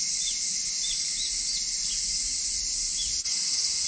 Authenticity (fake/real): real